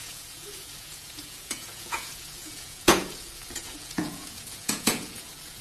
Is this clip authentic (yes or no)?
no